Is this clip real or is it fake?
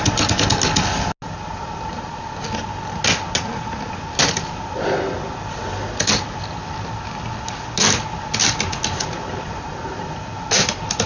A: real